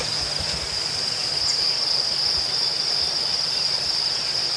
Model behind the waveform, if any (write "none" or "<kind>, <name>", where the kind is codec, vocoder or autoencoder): none